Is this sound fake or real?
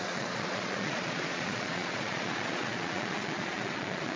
fake